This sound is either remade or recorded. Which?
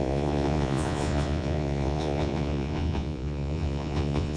remade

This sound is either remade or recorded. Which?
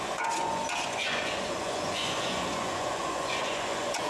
remade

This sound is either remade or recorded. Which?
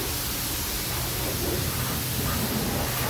recorded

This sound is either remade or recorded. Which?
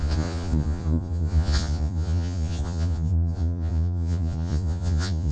remade